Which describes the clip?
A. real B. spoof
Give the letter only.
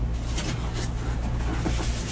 A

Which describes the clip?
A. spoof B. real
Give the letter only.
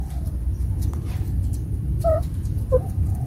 A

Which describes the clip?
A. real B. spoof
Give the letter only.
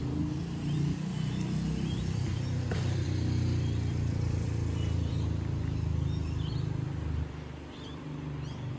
B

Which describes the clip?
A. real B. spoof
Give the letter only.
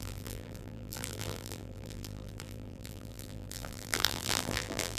B